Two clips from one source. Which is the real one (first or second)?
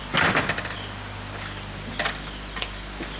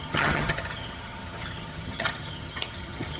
first